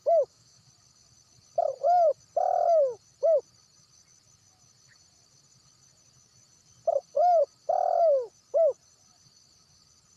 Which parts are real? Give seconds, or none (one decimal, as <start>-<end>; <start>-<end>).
0.7-10.2

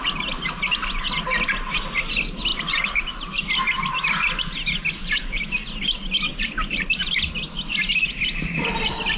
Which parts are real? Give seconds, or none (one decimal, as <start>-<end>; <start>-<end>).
0.0-2.5; 3.4-6.3; 7.1-9.2

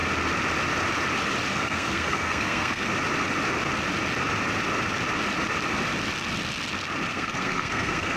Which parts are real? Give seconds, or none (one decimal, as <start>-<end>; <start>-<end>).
0.0-1.5; 2.9-7.1

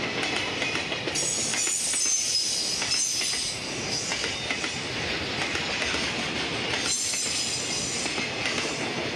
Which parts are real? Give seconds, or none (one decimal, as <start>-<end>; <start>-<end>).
0.0-9.2

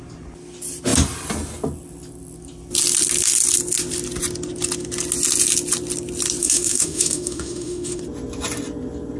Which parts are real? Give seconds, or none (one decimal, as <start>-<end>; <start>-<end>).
0.0-6.4; 8.0-9.2